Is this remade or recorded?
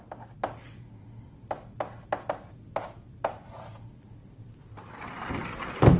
recorded